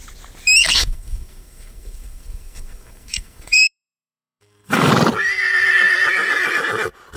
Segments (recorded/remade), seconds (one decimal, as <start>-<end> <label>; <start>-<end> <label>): 0.0-0.6 recorded; 0.6-4.9 remade; 4.9-7.2 recorded